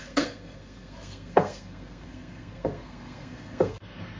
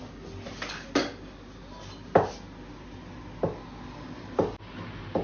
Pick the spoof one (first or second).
first